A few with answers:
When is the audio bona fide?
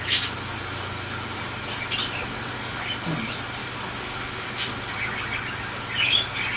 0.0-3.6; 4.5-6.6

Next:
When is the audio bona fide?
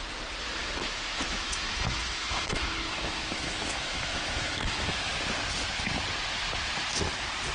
0.0-0.6; 5.1-7.5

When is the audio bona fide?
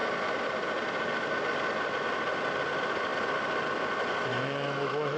0.0-4.3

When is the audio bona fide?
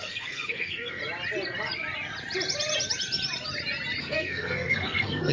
1.0-4.0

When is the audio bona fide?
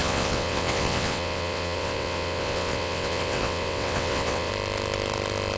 4.5-5.6